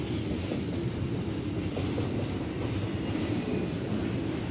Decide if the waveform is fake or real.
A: real